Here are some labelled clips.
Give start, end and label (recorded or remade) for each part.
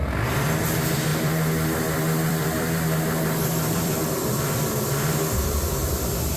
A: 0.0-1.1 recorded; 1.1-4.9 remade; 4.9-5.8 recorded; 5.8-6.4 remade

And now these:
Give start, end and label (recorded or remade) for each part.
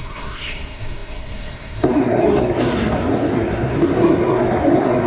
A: 0.0-5.1 remade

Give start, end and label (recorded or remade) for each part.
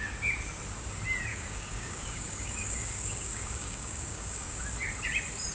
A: 0.0-1.3 recorded; 1.3-4.6 remade; 4.6-5.5 recorded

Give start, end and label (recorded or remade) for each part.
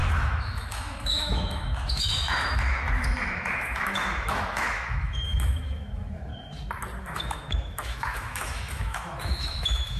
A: 0.0-6.3 remade; 6.3-7.0 recorded; 7.0-10.0 remade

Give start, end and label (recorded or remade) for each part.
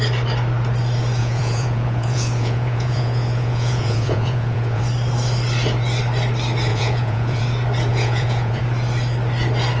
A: 0.0-1.2 recorded; 1.2-4.8 remade; 4.8-6.7 recorded; 6.7-7.4 remade; 7.4-7.9 recorded; 7.9-8.6 remade; 8.6-9.8 recorded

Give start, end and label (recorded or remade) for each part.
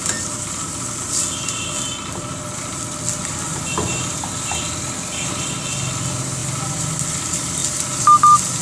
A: 0.0-8.6 recorded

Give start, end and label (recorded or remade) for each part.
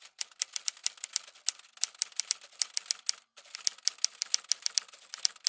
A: 0.0-5.5 recorded